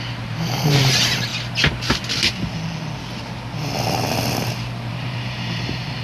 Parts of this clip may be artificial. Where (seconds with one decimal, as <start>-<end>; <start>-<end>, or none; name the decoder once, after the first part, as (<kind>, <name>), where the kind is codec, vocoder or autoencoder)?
0.0-1.3 (vocoder, BigVGAN v2); 4.9-6.0